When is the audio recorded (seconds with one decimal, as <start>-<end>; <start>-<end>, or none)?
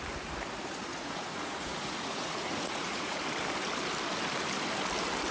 0.0-0.9; 3.2-5.3